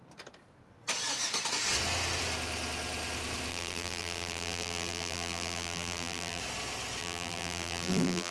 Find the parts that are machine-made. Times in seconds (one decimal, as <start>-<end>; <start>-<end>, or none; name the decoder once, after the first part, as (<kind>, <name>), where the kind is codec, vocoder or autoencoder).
3.5-6.4 (vocoder, BigVGAN v2); 7.0-8.3

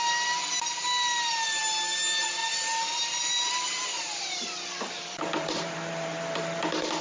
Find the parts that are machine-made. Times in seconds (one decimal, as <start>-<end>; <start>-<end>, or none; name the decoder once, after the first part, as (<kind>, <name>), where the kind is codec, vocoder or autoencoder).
2.4-6.6 (vocoder, BigVGAN v2)

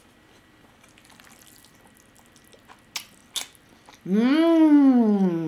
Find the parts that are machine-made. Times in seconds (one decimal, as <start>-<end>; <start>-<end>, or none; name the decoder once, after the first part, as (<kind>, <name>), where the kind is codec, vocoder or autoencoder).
none

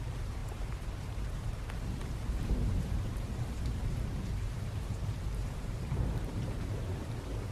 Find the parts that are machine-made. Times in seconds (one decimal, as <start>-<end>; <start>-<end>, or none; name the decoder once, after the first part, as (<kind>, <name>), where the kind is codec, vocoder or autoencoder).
0.0-7.5 (vocoder, BigVGAN v2)

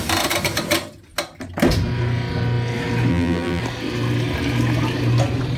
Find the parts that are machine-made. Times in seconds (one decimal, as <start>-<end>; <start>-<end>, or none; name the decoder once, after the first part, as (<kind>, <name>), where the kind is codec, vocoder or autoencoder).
3.1-3.6 (vocoder, BigVGAN v2)

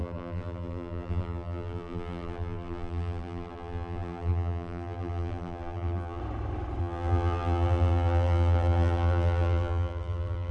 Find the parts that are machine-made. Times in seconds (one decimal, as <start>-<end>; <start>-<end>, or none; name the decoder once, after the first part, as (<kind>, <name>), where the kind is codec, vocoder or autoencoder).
0.0-6.2 (vocoder, BigVGAN v2); 6.8-10.5

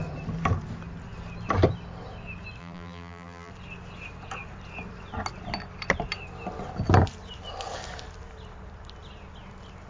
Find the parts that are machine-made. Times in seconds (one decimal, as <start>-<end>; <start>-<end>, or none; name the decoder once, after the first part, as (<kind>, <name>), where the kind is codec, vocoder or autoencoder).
2.6-3.5 (vocoder, BigVGAN v2)